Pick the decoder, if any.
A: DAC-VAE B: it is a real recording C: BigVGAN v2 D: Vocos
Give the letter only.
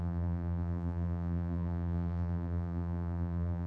C